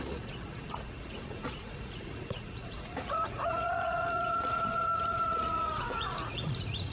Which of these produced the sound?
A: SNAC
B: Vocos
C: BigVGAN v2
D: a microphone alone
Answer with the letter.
B